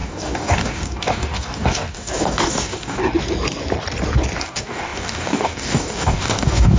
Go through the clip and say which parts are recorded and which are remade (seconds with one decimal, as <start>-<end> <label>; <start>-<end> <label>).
0.0-3.0 remade; 3.0-4.4 recorded; 4.4-6.8 remade